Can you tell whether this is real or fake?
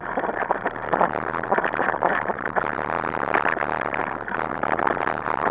real